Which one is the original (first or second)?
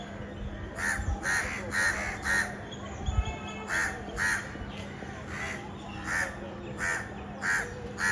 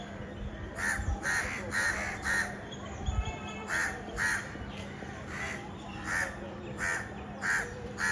first